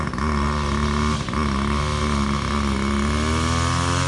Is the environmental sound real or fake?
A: real